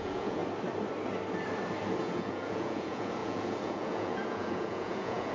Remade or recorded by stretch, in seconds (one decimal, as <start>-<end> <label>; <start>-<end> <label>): 0.0-0.4 remade; 0.4-2.0 recorded; 2.0-5.3 remade